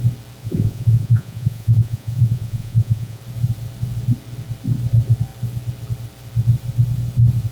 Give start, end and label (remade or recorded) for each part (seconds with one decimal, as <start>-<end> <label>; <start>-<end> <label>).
0.0-0.4 recorded; 0.4-3.2 remade; 3.2-7.5 recorded